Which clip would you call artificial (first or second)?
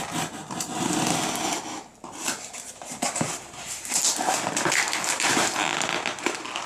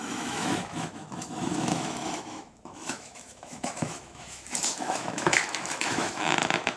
second